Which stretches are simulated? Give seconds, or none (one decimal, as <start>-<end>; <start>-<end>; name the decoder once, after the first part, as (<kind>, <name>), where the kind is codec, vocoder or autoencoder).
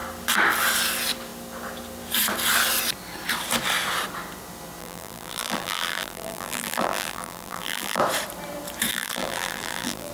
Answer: 4.8-8.0 (vocoder, BigVGAN v2); 8.9-10.1